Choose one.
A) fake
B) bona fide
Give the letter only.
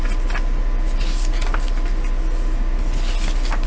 B